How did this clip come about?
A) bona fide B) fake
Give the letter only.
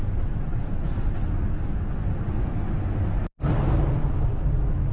A